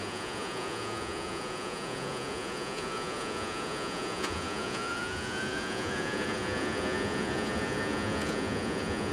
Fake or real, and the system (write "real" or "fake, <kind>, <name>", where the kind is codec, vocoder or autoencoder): fake, vocoder, Vocos